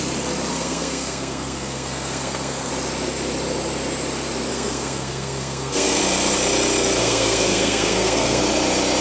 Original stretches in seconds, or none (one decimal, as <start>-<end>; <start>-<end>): 0.0-0.5; 2.7-4.5; 6.0-7.0; 8.4-9.0